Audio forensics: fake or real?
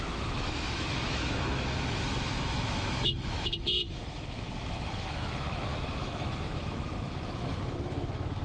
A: fake